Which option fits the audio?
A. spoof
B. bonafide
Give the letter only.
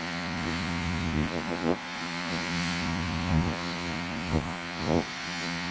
A